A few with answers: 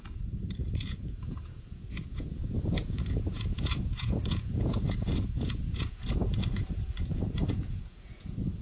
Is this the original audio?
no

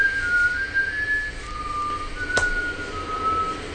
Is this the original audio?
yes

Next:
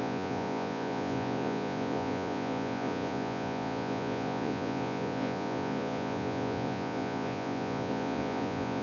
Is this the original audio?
no